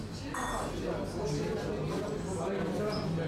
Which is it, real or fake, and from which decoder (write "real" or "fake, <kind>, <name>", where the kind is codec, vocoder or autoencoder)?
real